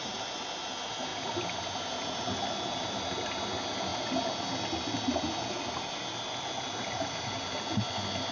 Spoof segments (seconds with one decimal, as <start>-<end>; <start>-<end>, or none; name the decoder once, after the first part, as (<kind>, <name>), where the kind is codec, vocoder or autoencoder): none

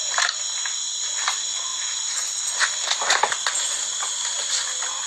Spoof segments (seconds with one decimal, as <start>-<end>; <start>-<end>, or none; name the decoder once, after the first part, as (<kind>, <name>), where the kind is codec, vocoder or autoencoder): none

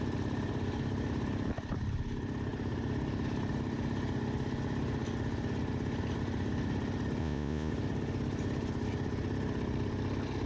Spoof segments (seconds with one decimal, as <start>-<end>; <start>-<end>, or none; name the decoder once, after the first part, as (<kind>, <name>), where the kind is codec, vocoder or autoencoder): 7.2-7.7 (vocoder, Vocos)

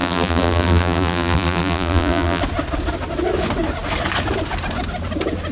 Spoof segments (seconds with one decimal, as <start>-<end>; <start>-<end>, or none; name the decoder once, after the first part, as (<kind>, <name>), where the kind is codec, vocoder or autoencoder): 0.0-2.4 (vocoder, BigVGAN v2)

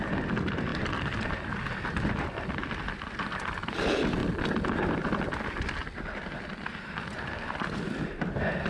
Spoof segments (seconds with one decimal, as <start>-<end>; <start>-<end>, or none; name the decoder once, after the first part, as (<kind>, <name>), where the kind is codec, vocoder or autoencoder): 0.7-3.7 (vocoder, BigVGAN v2); 4.2-7.8